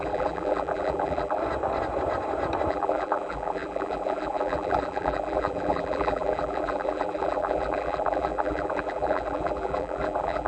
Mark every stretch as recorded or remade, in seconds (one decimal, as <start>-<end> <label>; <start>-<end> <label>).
0.0-1.4 remade; 1.4-2.7 recorded; 2.7-10.5 remade